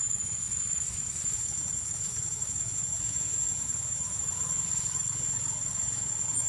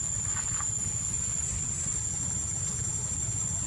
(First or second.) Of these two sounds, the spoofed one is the first